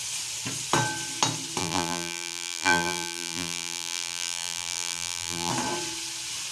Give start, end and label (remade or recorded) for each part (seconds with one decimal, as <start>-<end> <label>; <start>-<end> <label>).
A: 0.0-1.6 recorded; 1.6-5.5 remade; 5.5-6.5 recorded